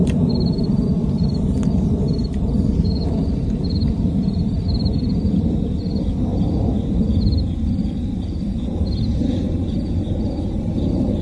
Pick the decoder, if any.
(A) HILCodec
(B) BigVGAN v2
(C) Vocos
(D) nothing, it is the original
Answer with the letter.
B